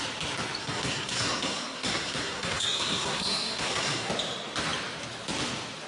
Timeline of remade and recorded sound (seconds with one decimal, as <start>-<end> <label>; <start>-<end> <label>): 0.0-0.6 recorded; 0.6-4.1 remade; 4.1-5.9 recorded